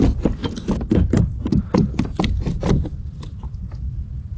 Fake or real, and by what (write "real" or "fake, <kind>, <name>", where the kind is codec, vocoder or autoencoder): real